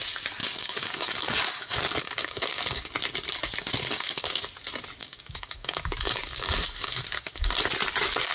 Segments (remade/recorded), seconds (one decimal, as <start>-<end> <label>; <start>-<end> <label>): 0.0-0.4 recorded; 0.4-2.9 remade; 2.9-3.7 recorded; 3.7-4.4 remade; 4.4-5.0 recorded; 5.0-7.5 remade; 7.5-8.3 recorded